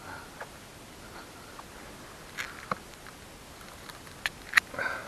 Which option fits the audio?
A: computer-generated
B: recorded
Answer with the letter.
B